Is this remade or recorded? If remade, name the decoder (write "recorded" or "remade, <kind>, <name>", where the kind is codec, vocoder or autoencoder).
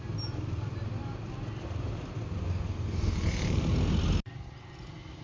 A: recorded